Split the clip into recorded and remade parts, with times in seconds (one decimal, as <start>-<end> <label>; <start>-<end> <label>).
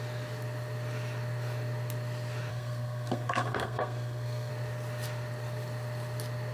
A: 0.0-2.5 recorded; 2.5-4.5 remade; 4.5-6.5 recorded